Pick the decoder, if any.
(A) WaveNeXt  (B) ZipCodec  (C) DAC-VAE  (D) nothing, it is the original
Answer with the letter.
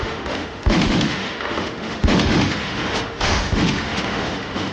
C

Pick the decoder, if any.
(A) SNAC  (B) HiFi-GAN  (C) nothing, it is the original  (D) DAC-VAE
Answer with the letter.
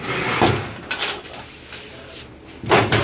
C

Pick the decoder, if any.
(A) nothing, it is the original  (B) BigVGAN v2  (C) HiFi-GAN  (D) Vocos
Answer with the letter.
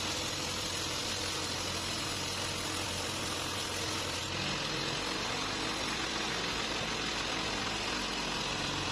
A